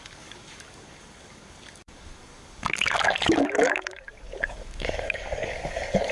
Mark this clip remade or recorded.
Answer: remade